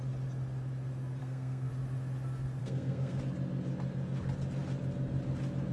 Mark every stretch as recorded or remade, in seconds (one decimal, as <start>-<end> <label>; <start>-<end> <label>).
0.0-1.2 recorded; 1.2-1.7 remade; 1.7-2.6 recorded; 2.6-3.2 remade; 3.2-5.7 recorded